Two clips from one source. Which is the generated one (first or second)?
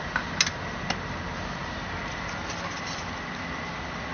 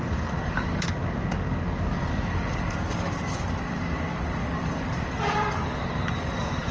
second